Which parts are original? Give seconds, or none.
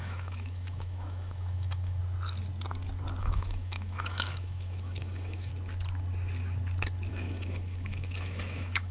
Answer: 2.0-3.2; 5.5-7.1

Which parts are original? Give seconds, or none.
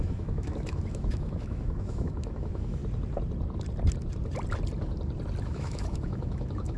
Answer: 2.8-5.4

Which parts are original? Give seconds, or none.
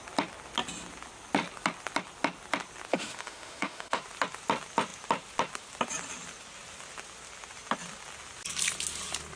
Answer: 0.0-2.9; 4.0-9.4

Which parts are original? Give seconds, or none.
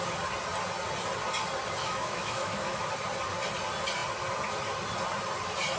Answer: 0.0-1.8; 2.9-5.8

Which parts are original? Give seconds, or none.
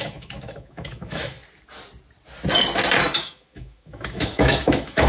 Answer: 1.4-3.0